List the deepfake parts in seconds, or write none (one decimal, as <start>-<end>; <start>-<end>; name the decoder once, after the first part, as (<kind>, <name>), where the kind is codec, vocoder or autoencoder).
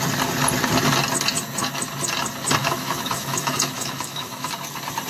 2.6-4.5 (autoencoder, DAC-VAE)